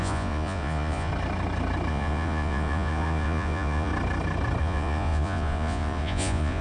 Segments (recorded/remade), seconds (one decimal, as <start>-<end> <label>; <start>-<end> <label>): 0.0-1.1 remade; 1.1-1.9 recorded; 1.9-3.9 remade; 3.9-4.6 recorded; 4.6-6.6 remade